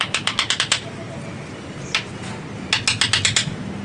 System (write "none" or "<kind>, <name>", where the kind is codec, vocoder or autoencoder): none